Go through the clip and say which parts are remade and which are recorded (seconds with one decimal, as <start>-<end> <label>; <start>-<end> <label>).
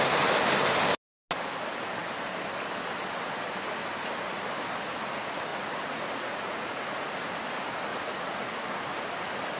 0.0-5.5 recorded; 5.5-7.3 remade; 7.3-7.9 recorded; 7.9-8.5 remade; 8.5-9.6 recorded